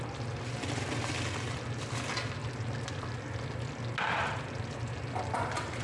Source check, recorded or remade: recorded